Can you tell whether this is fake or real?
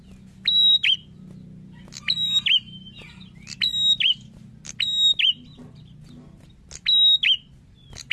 real